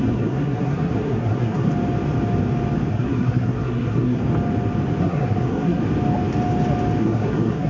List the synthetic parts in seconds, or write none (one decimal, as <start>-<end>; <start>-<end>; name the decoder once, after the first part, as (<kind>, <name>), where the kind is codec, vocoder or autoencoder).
0.0-1.7 (codec, SNAC); 2.9-4.2; 5.0-5.8; 7.0-7.7